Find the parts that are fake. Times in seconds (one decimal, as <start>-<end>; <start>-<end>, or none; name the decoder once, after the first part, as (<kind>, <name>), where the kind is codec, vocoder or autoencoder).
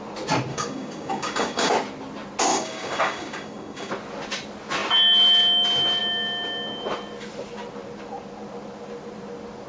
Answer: 0.5-1.7 (codec, DAC); 2.5-3.9